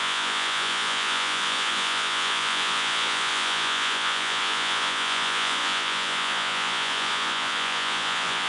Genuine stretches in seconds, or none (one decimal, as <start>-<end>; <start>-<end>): none